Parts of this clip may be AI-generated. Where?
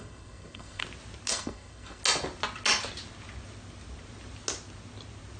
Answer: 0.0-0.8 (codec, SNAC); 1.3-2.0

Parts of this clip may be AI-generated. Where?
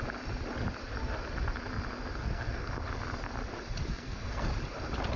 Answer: 2.2-2.7 (codec, SNAC); 3.9-4.5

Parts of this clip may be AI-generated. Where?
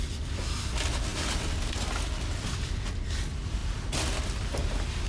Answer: none